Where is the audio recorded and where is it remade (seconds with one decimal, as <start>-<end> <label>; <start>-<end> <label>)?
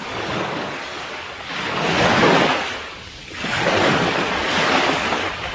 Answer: 0.0-5.5 remade